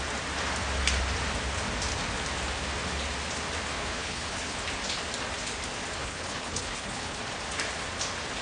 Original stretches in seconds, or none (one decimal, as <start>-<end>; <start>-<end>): 0.0-3.7; 4.6-6.0; 7.2-8.4